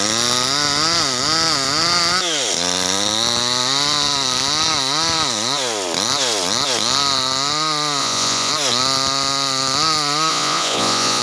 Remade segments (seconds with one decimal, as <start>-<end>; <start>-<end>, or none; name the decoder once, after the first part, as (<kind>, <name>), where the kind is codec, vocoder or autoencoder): 8.0-8.5 (vocoder, Vocos); 10.3-11.2